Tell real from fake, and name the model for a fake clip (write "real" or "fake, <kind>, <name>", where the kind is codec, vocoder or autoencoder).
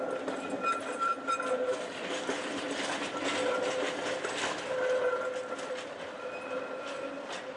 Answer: real